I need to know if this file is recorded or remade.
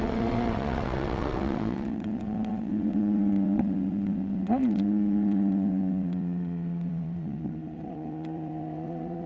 remade